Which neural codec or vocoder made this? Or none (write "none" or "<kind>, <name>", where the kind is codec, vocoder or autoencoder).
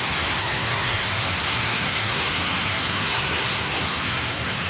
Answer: codec, SNAC